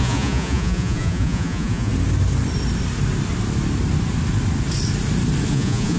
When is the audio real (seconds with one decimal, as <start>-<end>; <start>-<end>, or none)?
1.9-5.5